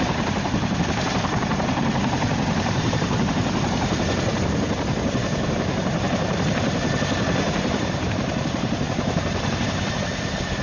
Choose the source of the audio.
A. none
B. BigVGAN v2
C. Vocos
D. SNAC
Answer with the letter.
B